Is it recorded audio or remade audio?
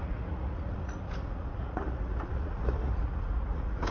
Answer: remade